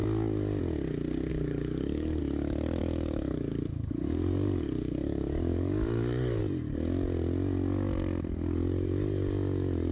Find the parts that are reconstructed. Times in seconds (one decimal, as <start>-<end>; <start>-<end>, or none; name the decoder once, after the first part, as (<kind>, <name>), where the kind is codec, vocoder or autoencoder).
1.3-2.2 (codec, DAC); 2.8-6.4